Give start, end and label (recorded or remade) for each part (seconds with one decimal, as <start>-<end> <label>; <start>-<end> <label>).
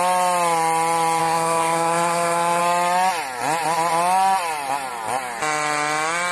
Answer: 0.0-1.2 recorded; 1.2-2.6 remade; 2.6-6.3 recorded